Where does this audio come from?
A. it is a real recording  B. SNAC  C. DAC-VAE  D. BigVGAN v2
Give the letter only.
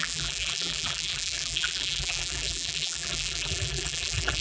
D